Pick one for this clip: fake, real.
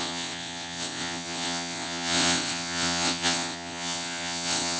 fake